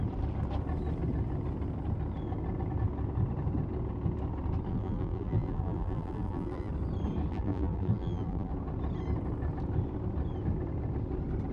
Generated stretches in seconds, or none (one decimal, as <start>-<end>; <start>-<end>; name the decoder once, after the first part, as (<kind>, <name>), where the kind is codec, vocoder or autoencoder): 4.7-6.7 (vocoder, BigVGAN v2); 7.3-8.5